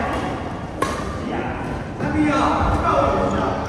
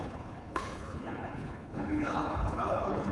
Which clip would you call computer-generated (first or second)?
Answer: second